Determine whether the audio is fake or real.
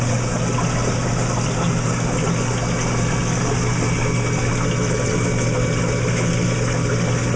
real